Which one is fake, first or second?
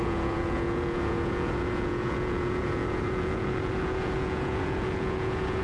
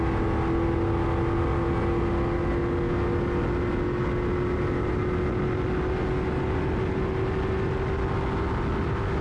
first